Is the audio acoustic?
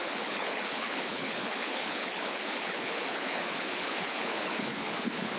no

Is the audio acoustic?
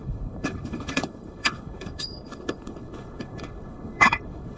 no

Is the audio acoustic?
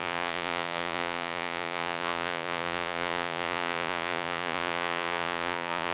no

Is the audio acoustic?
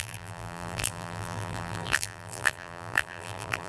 no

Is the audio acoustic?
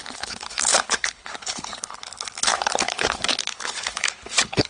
no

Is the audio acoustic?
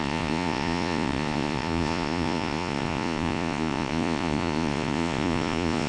no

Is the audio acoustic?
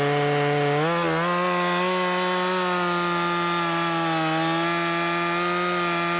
yes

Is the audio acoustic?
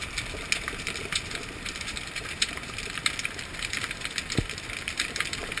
no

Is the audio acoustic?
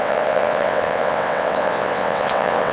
no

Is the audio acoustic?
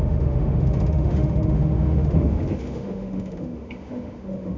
no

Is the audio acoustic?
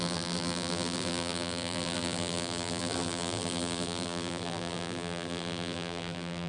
no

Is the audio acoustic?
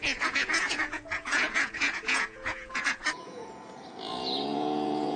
no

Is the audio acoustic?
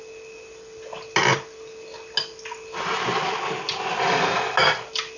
yes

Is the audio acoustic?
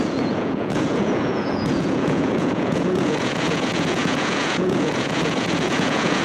no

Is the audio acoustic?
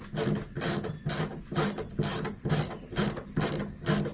yes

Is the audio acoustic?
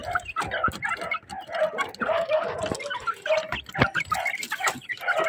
yes